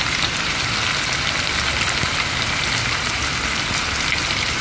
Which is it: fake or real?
fake